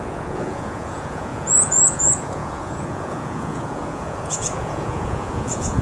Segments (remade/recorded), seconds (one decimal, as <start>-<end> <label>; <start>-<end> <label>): 0.0-5.8 remade